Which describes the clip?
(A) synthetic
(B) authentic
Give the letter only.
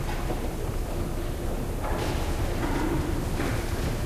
B